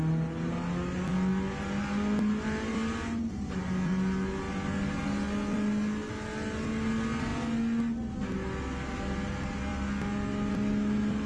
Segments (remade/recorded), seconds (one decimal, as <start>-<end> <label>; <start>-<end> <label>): 0.0-11.3 recorded